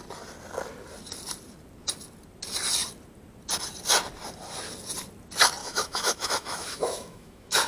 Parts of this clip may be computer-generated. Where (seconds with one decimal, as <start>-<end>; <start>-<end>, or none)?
5.6-7.7

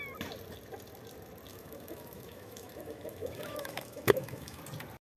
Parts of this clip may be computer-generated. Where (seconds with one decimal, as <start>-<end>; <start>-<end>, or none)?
1.5-4.6